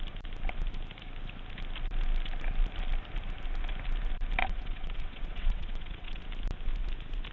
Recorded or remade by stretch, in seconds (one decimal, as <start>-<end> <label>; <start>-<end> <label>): 0.0-4.4 recorded; 4.4-6.2 remade; 6.2-7.3 recorded